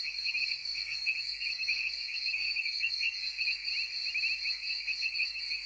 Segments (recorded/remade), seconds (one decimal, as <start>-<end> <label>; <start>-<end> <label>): 0.0-3.7 remade; 3.7-4.5 recorded; 4.5-5.7 remade